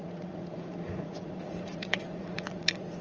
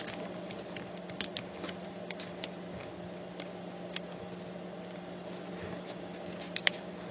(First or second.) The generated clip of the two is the first